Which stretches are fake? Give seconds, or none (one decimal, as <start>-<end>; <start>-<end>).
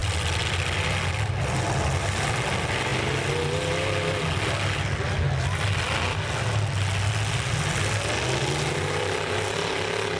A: none